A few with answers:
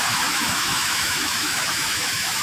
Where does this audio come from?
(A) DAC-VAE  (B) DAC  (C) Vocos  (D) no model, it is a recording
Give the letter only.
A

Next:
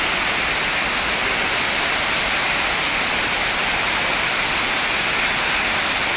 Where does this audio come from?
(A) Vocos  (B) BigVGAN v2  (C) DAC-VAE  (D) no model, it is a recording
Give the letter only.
D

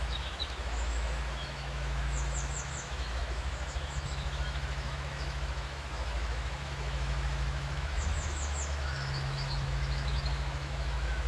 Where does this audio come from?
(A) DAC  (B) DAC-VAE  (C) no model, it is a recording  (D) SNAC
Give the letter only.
B